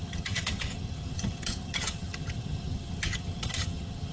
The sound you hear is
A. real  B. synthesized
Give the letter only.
B